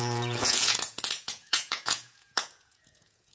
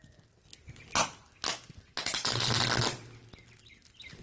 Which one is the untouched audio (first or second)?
second